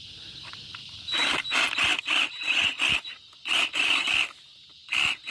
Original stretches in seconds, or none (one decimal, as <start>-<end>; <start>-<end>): 0.0-0.8; 4.0-5.3